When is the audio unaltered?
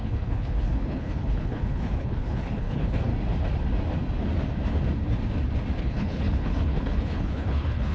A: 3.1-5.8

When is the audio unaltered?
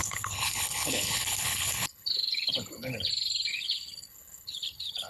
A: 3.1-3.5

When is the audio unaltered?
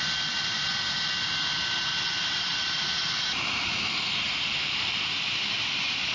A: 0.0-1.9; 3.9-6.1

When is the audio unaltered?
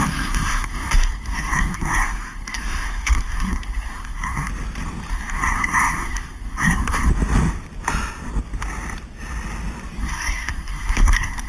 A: 4.5-5.1; 7.1-10.0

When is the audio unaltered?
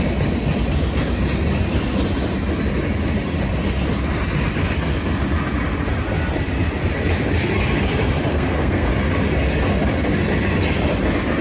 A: 0.0-8.3; 8.9-11.4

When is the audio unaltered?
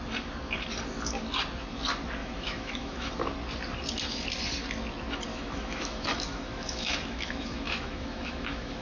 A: 0.0-2.2; 3.1-5.3